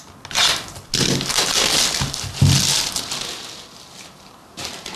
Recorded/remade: recorded